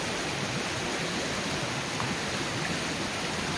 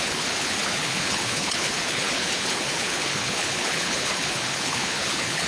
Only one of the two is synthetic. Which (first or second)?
second